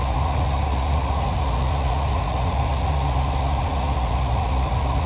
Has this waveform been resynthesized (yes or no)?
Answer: yes